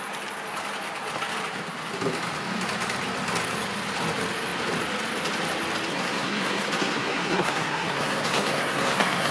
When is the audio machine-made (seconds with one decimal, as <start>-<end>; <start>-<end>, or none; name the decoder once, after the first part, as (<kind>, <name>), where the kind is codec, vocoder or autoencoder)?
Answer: 5.9-9.3 (codec, SNAC)